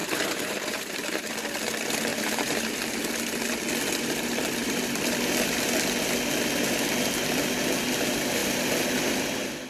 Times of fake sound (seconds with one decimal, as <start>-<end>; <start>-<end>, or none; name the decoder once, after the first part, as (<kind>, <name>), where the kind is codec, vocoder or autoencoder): 0.0-1.3 (vocoder, BigVGAN v2); 2.1-2.8